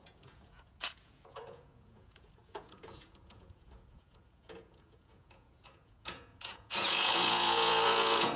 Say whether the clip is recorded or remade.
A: remade